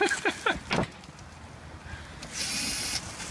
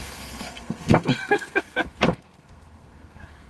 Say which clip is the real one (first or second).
first